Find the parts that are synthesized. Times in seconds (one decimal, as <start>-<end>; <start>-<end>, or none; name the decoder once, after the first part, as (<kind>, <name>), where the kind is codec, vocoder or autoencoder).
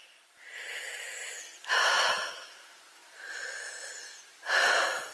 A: none